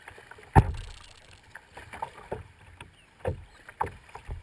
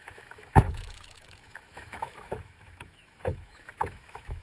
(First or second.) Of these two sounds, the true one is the first